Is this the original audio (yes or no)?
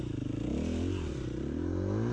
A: yes